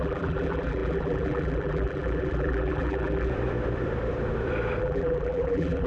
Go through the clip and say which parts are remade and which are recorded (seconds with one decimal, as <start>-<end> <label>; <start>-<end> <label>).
0.0-3.3 remade; 3.3-4.8 recorded; 4.8-5.9 remade